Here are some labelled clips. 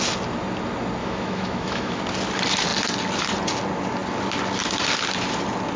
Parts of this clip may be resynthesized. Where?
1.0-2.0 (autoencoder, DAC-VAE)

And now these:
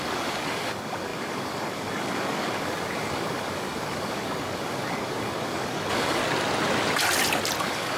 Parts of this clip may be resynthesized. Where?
0.0-6.2 (codec, DAC); 7.6-8.0

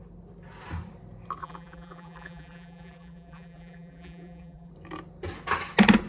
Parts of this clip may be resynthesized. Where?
1.4-4.7 (vocoder, BigVGAN v2)

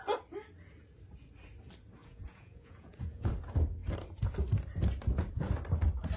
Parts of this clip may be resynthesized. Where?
2.0-3.3 (vocoder, Vocos)

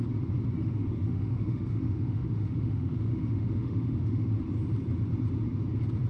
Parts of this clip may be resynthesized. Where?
0.6-4.3 (autoencoder, DAC-VAE)